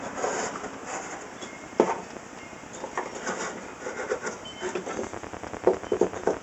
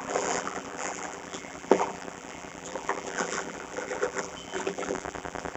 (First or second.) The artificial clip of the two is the second